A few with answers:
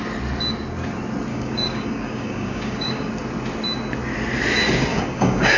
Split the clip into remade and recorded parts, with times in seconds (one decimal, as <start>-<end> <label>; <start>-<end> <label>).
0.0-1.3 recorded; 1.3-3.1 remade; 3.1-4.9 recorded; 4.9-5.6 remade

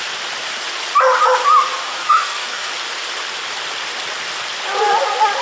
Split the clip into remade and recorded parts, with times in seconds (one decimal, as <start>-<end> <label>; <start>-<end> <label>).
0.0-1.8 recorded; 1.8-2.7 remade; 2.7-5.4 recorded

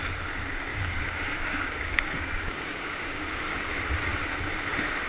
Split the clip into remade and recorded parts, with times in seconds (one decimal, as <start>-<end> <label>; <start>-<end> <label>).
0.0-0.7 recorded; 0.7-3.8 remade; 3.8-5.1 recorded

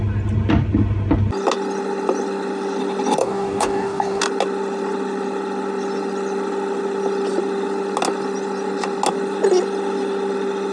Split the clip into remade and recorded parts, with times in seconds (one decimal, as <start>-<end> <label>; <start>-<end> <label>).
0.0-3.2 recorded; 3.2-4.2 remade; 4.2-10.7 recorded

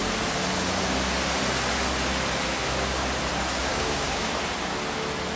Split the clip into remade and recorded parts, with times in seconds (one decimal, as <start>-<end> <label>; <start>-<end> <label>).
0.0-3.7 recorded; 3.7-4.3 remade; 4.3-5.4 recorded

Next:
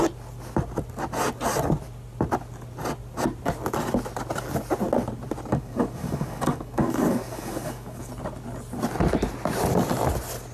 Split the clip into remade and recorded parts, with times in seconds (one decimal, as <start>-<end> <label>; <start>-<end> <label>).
0.0-5.5 recorded; 5.5-8.1 remade; 8.1-10.5 recorded